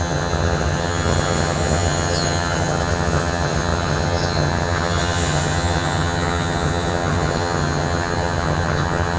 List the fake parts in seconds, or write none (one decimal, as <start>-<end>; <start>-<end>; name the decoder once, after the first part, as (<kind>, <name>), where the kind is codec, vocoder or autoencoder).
0.0-9.2 (vocoder, HiFi-GAN)